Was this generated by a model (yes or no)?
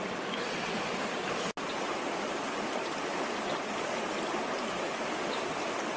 no